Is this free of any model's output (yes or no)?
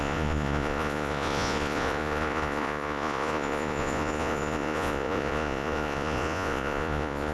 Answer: no